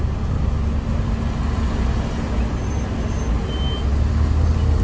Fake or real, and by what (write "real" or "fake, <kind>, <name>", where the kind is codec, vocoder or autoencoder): real